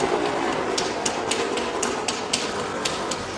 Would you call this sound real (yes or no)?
yes